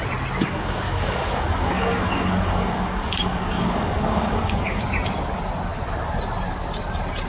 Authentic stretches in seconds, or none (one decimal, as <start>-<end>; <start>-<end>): 0.0-0.4; 4.8-7.3